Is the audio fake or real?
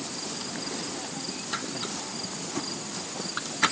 real